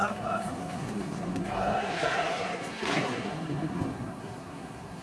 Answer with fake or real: fake